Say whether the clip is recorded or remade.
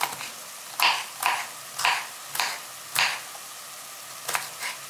recorded